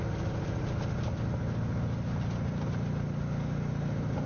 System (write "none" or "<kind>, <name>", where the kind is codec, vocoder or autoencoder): none